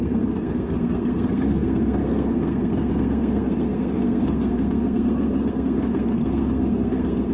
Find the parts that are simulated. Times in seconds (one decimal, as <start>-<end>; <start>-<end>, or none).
0.0-7.3